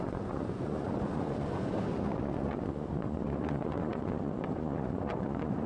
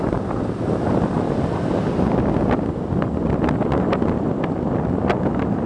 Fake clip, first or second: first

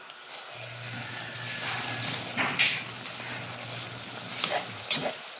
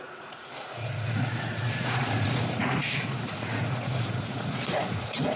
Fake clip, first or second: second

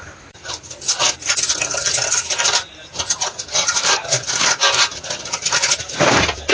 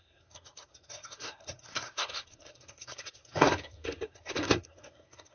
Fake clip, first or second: second